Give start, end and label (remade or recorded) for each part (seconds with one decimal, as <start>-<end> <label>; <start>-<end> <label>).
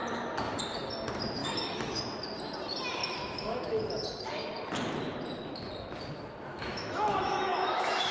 0.0-1.4 recorded; 1.4-2.0 remade; 2.0-3.0 recorded; 3.0-3.8 remade; 3.8-6.5 recorded; 6.5-8.1 remade